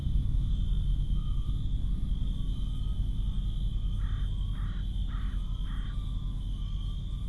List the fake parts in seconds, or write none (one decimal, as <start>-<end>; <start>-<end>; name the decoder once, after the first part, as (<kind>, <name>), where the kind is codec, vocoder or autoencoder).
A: 0.0-0.5 (autoencoder, DAC-VAE); 0.9-1.5